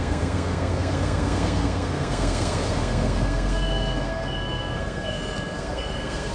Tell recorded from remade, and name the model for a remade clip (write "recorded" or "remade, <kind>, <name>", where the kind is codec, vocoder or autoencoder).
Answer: remade, codec, SNAC